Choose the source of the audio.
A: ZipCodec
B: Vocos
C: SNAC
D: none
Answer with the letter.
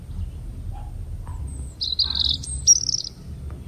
D